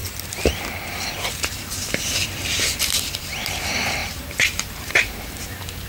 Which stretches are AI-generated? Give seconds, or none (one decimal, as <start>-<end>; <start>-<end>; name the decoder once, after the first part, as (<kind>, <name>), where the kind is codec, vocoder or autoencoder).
1.1-5.9 (vocoder, BigVGAN v2)